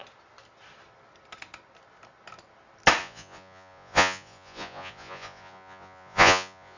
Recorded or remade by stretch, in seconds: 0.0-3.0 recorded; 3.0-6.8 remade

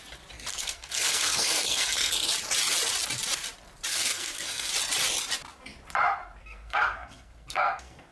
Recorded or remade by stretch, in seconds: 0.0-0.5 recorded; 0.5-2.1 remade; 2.1-3.9 recorded; 3.9-4.7 remade; 4.7-6.4 recorded; 6.4-8.1 remade